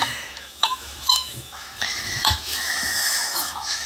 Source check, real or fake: fake